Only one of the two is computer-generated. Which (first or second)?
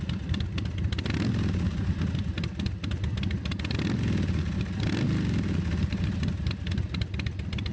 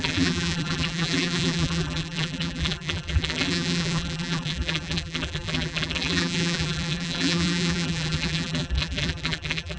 second